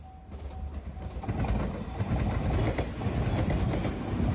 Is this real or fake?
real